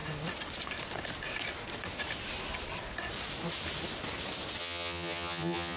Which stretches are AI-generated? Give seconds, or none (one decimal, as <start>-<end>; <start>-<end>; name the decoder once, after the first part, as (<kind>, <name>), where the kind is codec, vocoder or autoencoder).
4.6-5.8 (vocoder, HiFi-GAN)